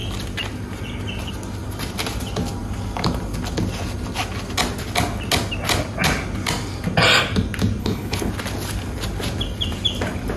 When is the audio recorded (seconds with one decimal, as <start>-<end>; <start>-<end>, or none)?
0.0-7.8; 8.3-10.4